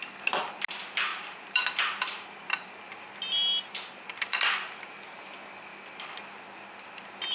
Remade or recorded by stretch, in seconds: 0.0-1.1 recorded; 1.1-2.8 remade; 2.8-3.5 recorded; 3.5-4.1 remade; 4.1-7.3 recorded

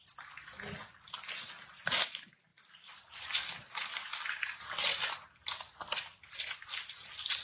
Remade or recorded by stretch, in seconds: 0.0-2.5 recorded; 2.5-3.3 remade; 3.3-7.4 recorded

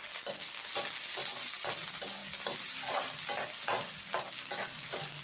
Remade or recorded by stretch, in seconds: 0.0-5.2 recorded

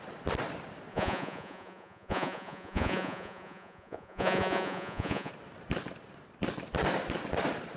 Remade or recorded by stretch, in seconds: 0.0-0.9 recorded; 0.9-5.3 remade; 5.3-7.8 recorded

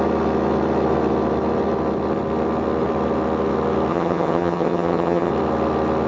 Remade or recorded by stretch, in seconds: 0.0-3.9 recorded; 3.9-5.3 remade; 5.3-6.1 recorded